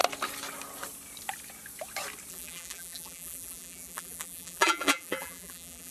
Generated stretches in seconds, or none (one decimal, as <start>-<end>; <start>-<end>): 2.3-5.9